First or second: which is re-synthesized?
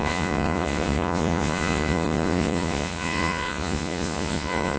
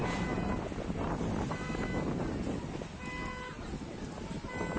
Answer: first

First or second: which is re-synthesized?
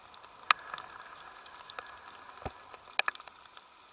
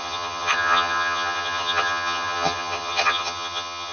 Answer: second